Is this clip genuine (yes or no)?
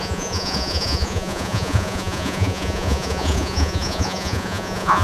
no